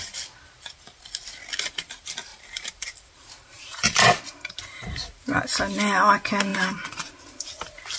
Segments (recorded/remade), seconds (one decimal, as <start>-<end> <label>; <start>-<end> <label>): 0.0-2.3 recorded; 2.3-4.2 remade; 4.2-6.5 recorded; 6.5-7.1 remade; 7.1-8.0 recorded